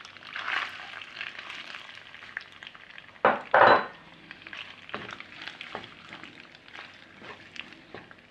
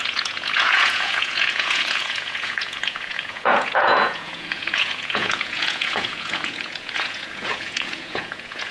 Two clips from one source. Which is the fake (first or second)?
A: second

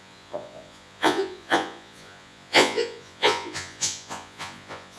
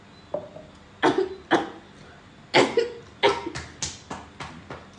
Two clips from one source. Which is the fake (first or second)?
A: first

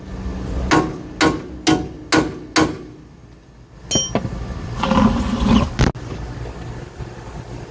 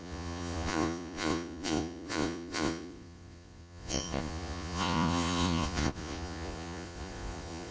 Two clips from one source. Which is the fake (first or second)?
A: second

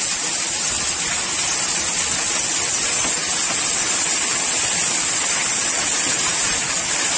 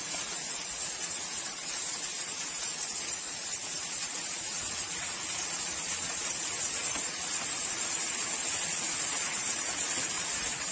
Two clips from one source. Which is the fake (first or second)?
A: second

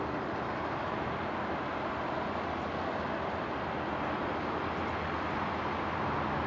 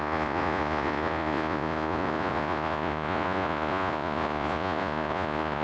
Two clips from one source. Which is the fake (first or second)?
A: second